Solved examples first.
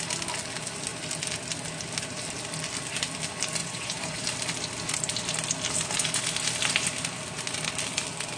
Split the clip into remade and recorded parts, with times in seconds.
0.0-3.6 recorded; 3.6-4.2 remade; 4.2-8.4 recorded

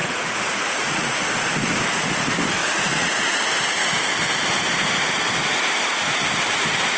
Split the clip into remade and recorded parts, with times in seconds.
0.0-1.2 remade; 1.2-2.6 recorded; 2.6-3.4 remade; 3.4-7.0 recorded

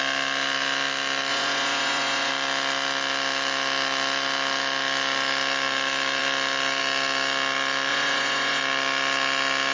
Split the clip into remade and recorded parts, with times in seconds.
0.0-1.3 recorded; 1.3-2.3 remade; 2.3-7.9 recorded; 7.9-8.6 remade; 8.6-9.7 recorded

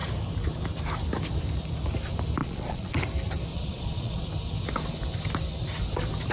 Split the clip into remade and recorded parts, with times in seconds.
0.0-2.4 recorded; 2.4-3.0 remade; 3.0-3.5 recorded; 3.5-4.2 remade; 4.2-6.3 recorded

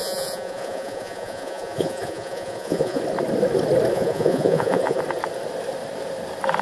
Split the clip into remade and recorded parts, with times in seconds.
0.0-3.0 remade; 3.0-3.9 recorded; 3.9-5.0 remade; 5.0-6.6 recorded

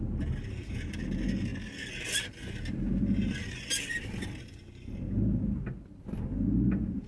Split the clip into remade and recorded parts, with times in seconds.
0.0-7.1 recorded